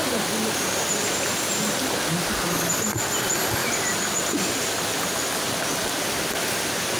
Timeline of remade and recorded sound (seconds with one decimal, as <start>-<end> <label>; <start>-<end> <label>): 0.0-7.0 recorded